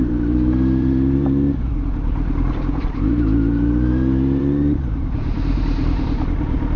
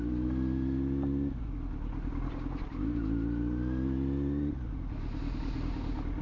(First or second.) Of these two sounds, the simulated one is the first